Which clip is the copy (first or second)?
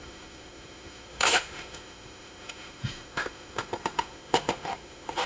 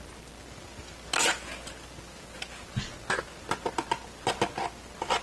first